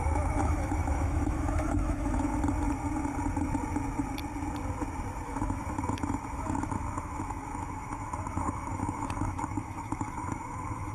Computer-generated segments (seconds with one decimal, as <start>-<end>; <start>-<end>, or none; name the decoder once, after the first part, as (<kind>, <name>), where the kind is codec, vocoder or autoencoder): 0.0-2.3 (autoencoder, DAC-VAE); 5.1-10.9